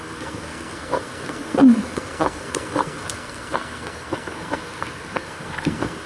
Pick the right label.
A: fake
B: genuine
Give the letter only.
A